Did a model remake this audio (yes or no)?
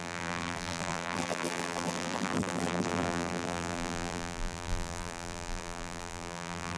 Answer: yes